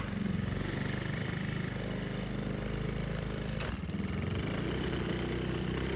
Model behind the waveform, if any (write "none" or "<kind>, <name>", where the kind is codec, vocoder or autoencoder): vocoder, BigVGAN v2